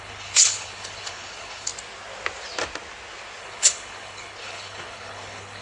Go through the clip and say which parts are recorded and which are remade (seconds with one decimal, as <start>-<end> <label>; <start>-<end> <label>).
0.0-1.7 remade; 1.7-3.4 recorded; 3.4-5.6 remade